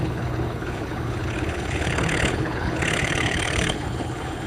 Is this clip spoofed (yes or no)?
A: yes